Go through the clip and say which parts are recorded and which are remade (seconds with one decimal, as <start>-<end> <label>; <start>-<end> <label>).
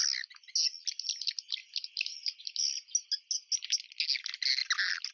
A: 0.0-5.1 recorded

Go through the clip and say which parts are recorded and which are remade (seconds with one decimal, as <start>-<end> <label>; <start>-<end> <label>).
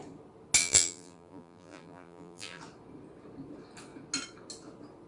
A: 0.0-0.6 recorded; 0.6-2.6 remade; 2.6-5.1 recorded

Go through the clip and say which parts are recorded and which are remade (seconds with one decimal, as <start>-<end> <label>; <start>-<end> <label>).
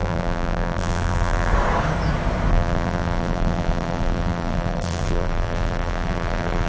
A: 0.0-1.5 remade; 1.5-2.5 recorded; 2.5-6.7 remade